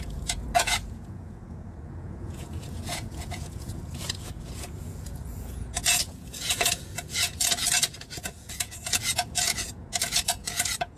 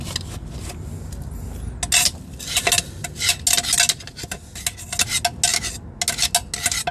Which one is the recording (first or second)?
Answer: second